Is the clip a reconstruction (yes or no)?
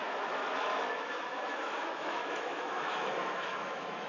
yes